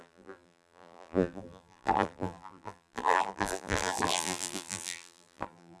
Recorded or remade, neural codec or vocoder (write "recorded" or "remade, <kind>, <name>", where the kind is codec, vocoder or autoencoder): remade, vocoder, BigVGAN v2